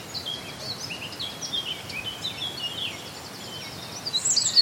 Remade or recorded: recorded